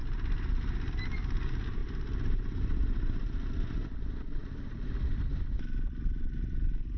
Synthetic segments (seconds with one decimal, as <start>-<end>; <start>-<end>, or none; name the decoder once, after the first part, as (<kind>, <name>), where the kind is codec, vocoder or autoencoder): 0.0-0.9 (vocoder, BigVGAN v2); 1.8-5.5